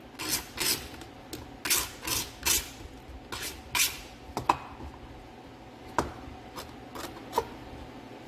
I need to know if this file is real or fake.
real